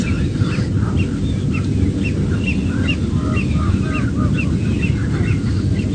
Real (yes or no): yes